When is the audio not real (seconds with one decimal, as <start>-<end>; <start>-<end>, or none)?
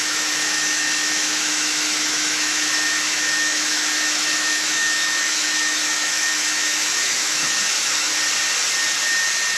0.0-8.1